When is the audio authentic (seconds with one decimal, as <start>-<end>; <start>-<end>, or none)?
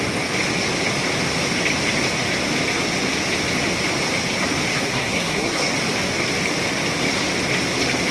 0.0-4.7; 5.7-8.1